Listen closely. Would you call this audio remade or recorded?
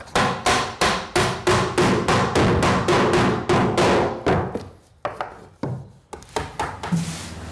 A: recorded